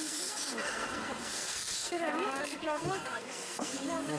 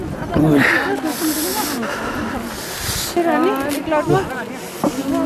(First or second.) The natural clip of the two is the second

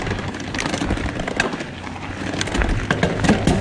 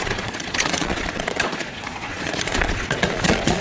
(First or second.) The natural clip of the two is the first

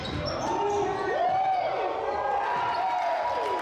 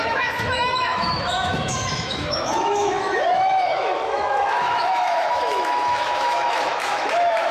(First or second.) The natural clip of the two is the first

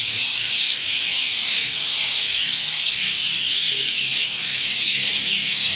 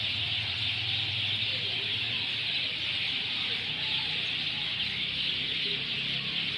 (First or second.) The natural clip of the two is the second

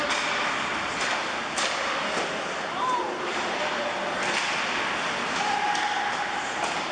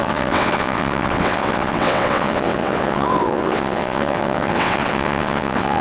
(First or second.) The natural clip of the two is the first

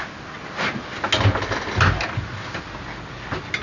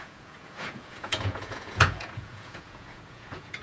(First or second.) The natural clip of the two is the first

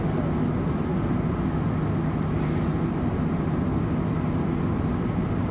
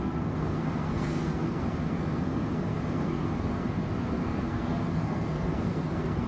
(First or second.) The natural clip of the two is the first